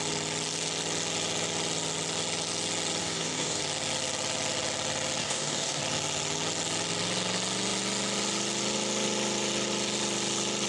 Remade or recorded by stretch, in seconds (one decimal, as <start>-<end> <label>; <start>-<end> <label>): 0.0-3.0 recorded; 3.0-3.6 remade; 3.6-5.2 recorded; 5.2-5.8 remade; 5.8-10.7 recorded